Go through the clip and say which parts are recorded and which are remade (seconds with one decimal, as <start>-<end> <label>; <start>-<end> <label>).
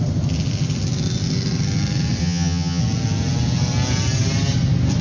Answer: 0.0-2.2 recorded; 2.2-2.8 remade; 2.8-5.0 recorded